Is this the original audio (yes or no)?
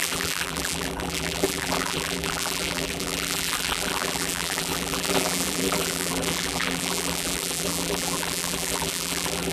no